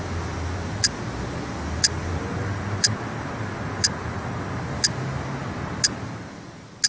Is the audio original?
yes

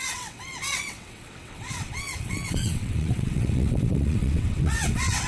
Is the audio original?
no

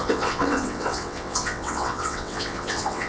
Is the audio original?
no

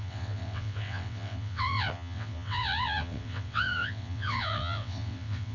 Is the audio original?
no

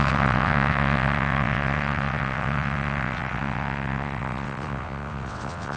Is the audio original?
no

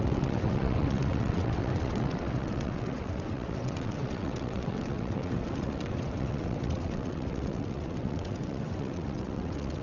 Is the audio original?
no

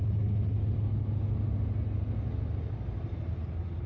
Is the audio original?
yes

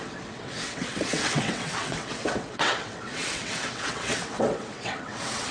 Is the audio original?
no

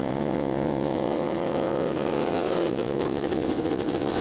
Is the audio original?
no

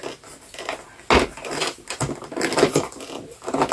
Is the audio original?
yes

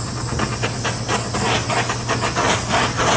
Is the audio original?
yes